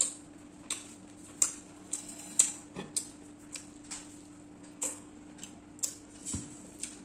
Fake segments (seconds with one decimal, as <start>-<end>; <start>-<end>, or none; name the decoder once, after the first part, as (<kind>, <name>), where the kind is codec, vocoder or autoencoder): 4.6-5.1 (codec, SNAC)